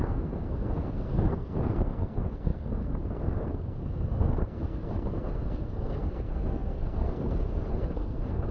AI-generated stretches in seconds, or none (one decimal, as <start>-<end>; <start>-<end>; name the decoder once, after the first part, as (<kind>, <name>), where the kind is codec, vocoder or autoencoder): 0.0-8.5 (codec, SNAC)